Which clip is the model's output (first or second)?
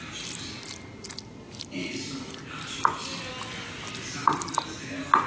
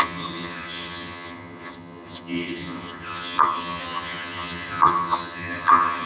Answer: second